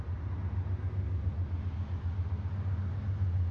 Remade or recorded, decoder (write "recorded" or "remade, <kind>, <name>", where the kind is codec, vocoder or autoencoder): recorded